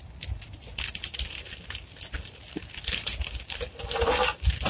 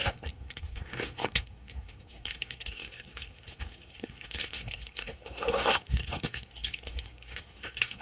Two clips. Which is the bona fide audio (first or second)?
first